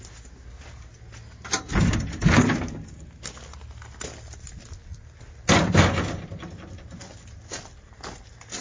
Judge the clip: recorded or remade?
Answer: recorded